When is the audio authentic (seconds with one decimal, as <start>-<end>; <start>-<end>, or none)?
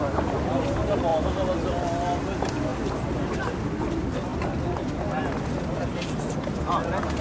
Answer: 0.0-7.2